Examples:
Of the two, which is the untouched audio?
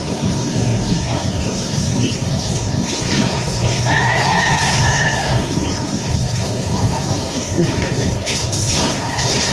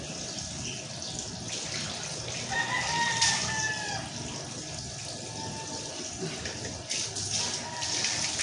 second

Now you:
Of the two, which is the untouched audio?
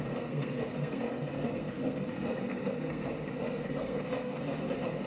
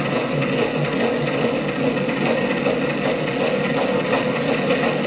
second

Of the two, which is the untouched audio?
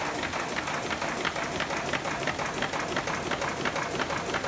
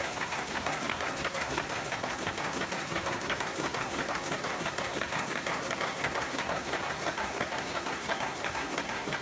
first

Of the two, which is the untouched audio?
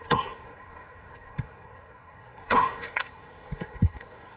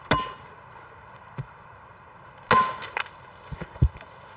second